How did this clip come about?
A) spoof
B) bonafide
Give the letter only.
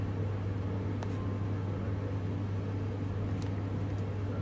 B